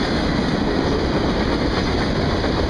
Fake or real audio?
real